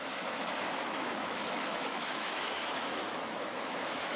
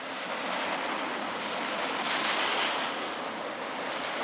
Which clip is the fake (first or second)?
first